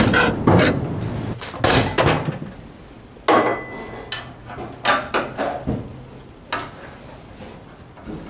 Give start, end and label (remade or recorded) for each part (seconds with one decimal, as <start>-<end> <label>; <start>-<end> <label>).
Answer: 0.0-8.3 recorded